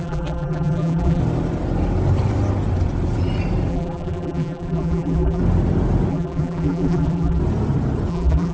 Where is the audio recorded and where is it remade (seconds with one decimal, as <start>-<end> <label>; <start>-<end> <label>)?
0.0-1.2 remade; 1.2-3.7 recorded; 3.7-5.4 remade; 5.4-6.1 recorded; 6.1-7.4 remade; 7.4-8.1 recorded; 8.1-8.5 remade